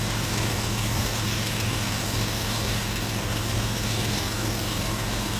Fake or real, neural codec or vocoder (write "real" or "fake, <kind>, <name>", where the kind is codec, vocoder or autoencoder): fake, codec, DAC